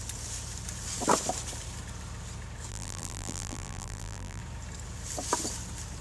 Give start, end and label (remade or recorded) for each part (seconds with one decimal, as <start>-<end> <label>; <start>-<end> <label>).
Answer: 0.0-2.7 recorded; 2.7-4.4 remade; 4.4-6.0 recorded